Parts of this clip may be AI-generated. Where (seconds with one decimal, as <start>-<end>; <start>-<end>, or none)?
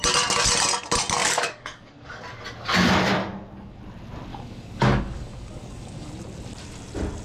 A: 1.2-2.2; 3.2-3.8; 4.3-6.1